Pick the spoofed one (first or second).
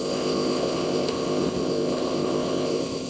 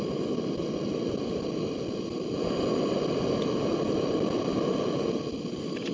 first